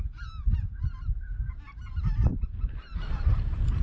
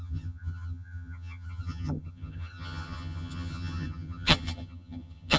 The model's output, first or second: second